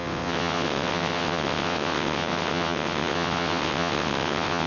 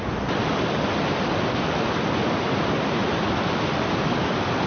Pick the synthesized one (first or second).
first